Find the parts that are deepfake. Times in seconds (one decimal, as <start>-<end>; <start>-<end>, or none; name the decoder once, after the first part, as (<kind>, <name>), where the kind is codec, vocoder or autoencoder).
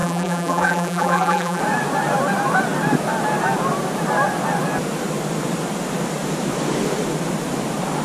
0.0-1.6 (vocoder, BigVGAN v2)